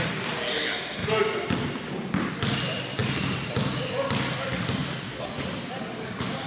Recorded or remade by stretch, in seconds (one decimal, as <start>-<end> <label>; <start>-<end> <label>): 0.0-1.0 recorded; 1.0-1.7 remade; 1.7-3.0 recorded; 3.0-3.5 remade; 3.5-4.8 recorded; 4.8-6.5 remade